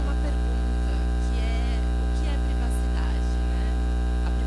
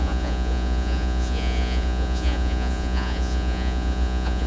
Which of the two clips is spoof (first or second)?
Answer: second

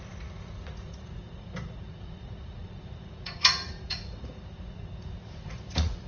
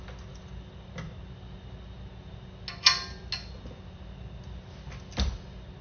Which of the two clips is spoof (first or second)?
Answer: first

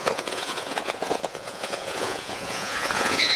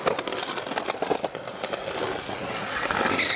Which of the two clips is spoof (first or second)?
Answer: first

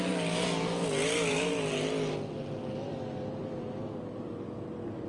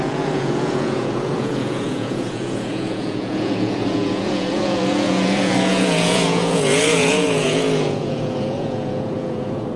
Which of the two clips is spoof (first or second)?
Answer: second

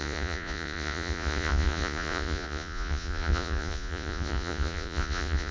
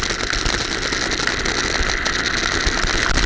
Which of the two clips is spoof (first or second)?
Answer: first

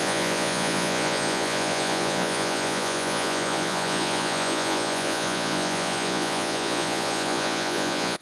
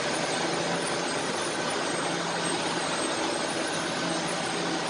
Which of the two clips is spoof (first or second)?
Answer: first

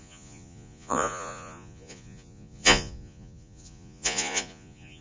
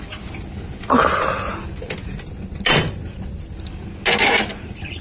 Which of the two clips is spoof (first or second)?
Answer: first